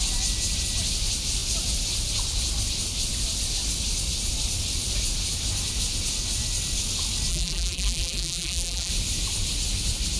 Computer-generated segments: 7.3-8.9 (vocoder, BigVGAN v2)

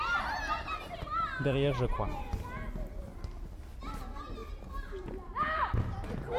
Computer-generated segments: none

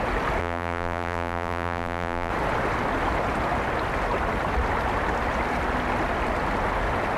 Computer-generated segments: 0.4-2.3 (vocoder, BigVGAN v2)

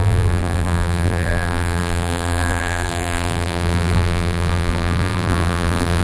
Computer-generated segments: 0.0-6.0 (vocoder, BigVGAN v2)